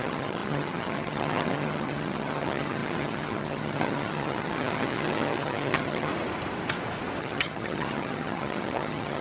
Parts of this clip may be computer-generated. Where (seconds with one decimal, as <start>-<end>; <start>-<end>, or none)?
0.0-6.1; 7.2-9.2